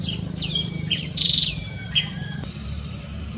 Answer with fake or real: fake